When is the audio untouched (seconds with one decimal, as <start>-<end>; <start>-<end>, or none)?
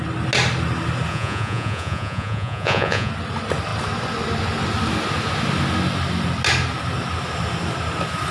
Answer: 0.0-1.1; 3.1-8.3